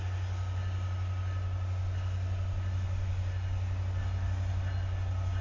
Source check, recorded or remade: recorded